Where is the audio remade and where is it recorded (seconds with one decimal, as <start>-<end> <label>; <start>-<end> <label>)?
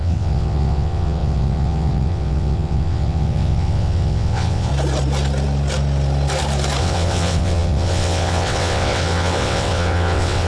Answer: 0.0-4.7 remade; 4.7-6.8 recorded; 6.8-10.5 remade